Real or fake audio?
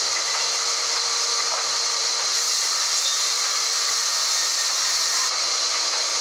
real